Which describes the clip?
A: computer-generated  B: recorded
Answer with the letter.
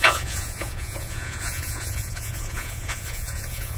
A